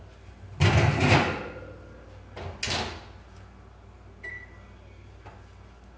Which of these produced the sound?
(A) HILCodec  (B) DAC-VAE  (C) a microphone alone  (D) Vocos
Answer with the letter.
C